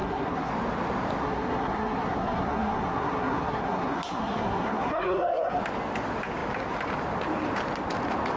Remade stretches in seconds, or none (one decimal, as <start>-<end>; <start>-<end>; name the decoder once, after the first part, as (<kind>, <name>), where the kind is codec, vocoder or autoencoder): 0.0-0.5 (codec, SNAC); 1.2-5.6